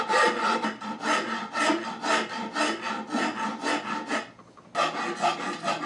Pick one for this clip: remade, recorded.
recorded